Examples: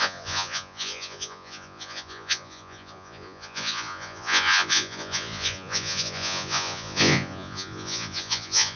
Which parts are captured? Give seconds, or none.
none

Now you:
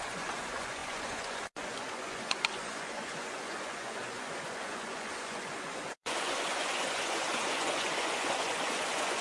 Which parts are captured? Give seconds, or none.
none

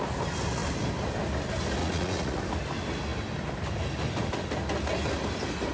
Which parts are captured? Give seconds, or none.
0.0-1.8; 2.4-5.7

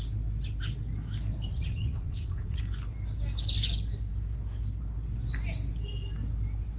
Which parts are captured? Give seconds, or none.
0.0-1.5; 2.6-6.8

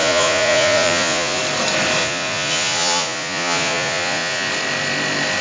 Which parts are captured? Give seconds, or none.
1.4-2.0; 4.5-5.4

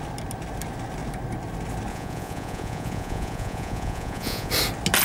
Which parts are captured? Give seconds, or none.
0.0-1.9; 4.5-5.0

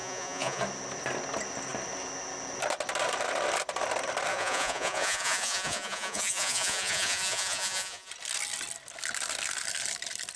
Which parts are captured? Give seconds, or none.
0.6-4.3; 8.1-10.4